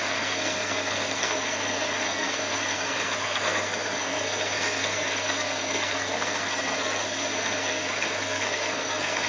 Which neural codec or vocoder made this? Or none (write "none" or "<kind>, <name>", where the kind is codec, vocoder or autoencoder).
codec, SNAC